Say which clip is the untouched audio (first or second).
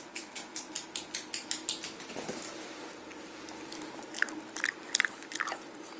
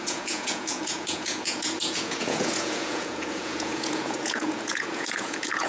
first